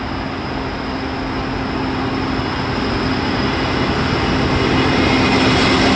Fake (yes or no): no